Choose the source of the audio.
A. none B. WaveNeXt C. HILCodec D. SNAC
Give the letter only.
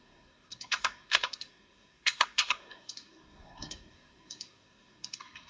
D